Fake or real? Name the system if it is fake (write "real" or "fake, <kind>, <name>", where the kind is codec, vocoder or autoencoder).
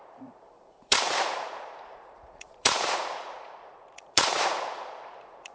fake, vocoder, Vocos